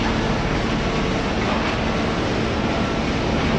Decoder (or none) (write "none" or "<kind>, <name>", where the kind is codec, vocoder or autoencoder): none